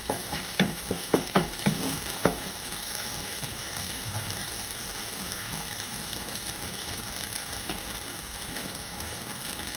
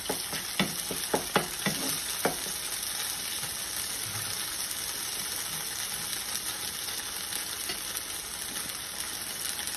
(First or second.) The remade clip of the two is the first